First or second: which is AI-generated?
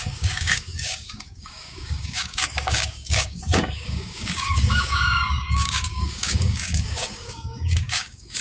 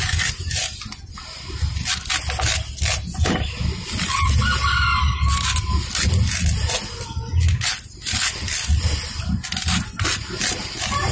first